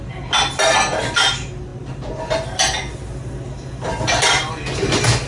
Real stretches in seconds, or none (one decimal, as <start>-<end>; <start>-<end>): 0.0-5.3